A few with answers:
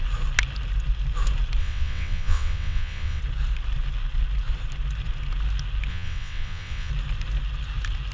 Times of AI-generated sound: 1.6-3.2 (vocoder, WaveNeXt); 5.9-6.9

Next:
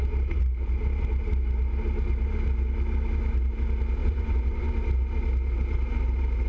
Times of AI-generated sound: 4.0-4.7 (vocoder, Vocos)

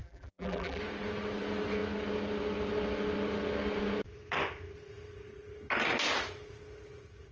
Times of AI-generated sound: 0.0-0.8 (vocoder, BigVGAN v2)

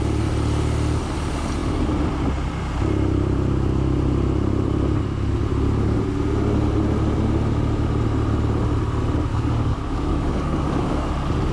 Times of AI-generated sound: 9.3-11.1 (codec, DAC)

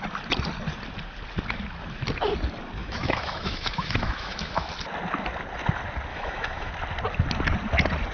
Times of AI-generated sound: 2.8-4.7 (autoencoder, DAC-VAE); 6.1-6.7